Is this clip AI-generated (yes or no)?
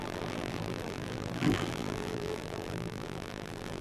yes